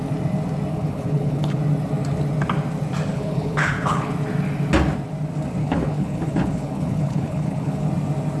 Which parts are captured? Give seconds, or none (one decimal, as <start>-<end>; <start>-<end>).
0.0-0.7; 1.6-3.1; 4.1-5.6; 7.9-8.4